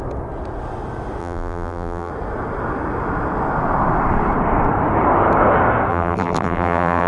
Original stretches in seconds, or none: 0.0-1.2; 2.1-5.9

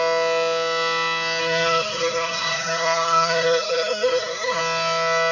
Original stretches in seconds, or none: 0.0-1.4; 4.6-5.3

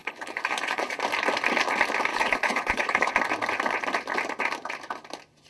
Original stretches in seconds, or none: 1.0-2.1; 3.1-5.5

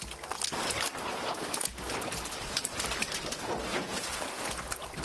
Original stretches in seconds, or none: 0.0-3.7; 4.4-5.0

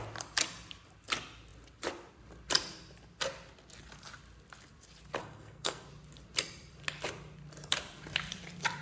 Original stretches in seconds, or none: 0.0-5.2; 5.9-8.8